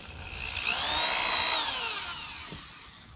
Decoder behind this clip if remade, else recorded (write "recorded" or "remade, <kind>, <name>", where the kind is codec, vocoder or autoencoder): recorded